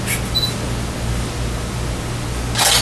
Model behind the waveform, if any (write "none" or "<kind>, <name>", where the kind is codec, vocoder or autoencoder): none